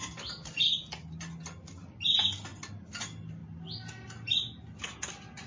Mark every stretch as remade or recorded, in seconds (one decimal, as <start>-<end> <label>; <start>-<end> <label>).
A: 0.0-5.5 recorded